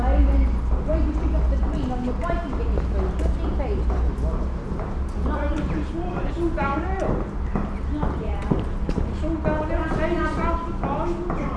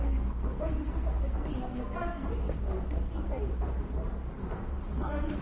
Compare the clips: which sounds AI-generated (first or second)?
second